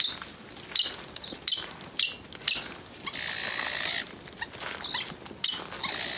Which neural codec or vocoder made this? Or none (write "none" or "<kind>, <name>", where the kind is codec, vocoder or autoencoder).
none